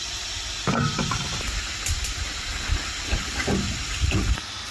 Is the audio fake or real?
fake